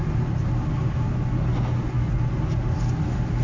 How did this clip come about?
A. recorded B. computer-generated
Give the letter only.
A